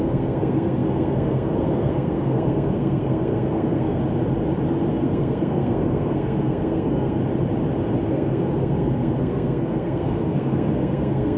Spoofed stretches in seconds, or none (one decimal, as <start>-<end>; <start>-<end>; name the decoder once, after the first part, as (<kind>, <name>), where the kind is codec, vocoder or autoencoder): 0.0-4.0 (codec, SNAC); 4.9-7.2; 8.1-11.4